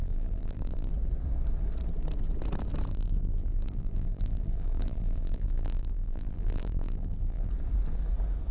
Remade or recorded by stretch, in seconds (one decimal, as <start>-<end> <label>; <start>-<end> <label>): 0.0-0.9 remade; 0.9-2.9 recorded; 2.9-7.5 remade; 7.5-8.5 recorded